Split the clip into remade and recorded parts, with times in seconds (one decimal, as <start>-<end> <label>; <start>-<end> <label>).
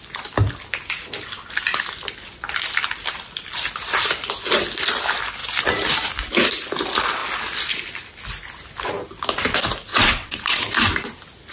0.0-9.9 recorded; 9.9-10.7 remade; 10.7-11.5 recorded